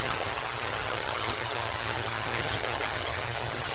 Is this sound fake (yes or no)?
yes